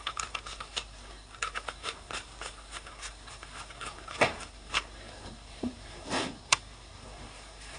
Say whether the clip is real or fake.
fake